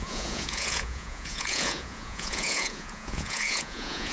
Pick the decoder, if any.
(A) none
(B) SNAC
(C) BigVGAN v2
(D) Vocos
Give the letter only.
D